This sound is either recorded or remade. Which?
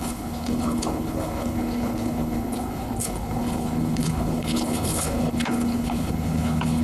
remade